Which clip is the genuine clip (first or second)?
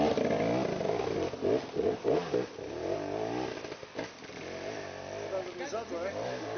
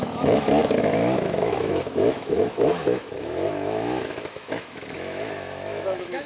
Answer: first